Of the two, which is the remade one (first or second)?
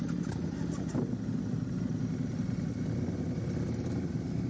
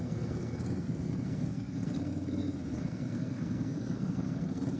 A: second